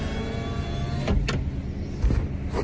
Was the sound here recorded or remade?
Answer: recorded